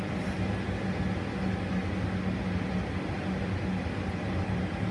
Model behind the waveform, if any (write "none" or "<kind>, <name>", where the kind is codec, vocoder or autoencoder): none